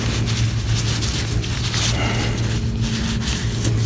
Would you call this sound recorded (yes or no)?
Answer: yes